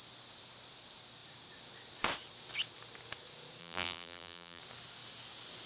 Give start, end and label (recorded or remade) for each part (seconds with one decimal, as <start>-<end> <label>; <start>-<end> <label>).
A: 0.0-3.6 recorded; 3.6-4.6 remade; 4.6-5.7 recorded